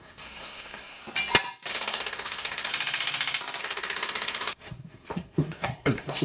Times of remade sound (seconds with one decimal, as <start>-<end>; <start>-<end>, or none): 0.0-1.0; 1.7-2.7; 3.6-6.2